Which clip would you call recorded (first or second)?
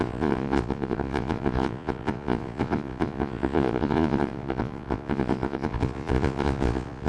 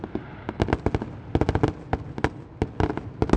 second